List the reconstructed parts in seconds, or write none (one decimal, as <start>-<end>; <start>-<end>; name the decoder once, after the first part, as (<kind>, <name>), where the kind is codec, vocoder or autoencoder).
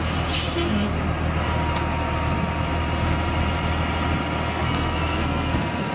4.5-5.9 (codec, SNAC)